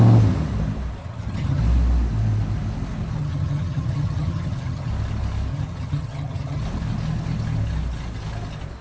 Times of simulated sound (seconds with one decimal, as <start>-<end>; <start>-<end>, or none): 1.0-1.6; 3.2-4.9; 5.5-6.6